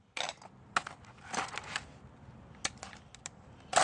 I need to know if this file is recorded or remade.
recorded